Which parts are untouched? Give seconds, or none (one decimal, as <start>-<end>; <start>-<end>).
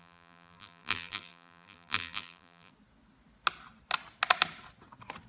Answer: 2.7-5.3